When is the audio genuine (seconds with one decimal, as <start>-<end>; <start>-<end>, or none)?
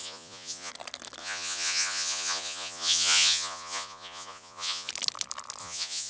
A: 0.7-1.2; 4.9-5.6